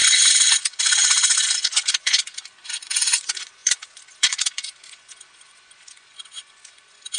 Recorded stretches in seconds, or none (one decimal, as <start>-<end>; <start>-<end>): none